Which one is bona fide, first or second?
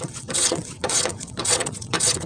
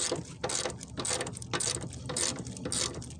second